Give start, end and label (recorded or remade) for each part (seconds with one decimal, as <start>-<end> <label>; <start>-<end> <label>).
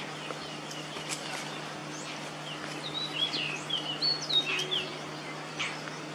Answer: 0.0-6.1 recorded